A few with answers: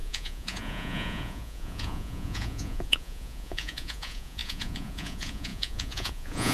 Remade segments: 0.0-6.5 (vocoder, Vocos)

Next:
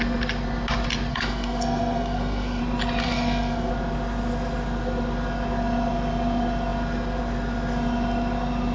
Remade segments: 1.1-2.6 (codec, SNAC); 3.0-3.7

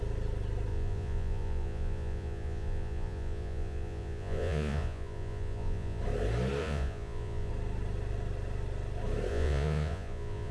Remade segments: 0.7-6.0 (vocoder, Vocos); 6.6-7.5; 9.3-10.5

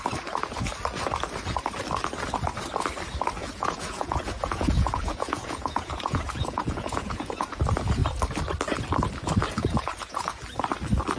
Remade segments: 3.4-7.6 (vocoder, Vocos); 9.6-10.4

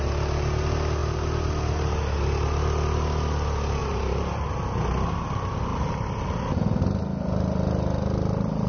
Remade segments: 1.0-2.0 (vocoder, BigVGAN v2); 3.8-4.5; 5.7-6.8

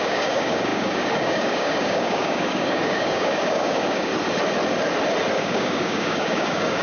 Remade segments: 0.0-4.1 (codec, DAC); 5.3-6.8

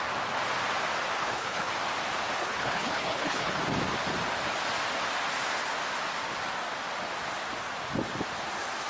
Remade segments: 1.2-1.7 (codec, HILCodec); 2.4-3.6